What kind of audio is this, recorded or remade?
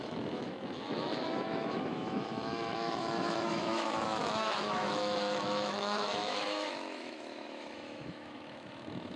remade